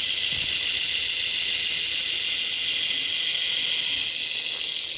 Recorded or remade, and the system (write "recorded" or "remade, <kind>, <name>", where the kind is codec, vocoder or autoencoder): recorded